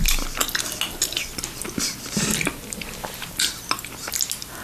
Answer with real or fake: real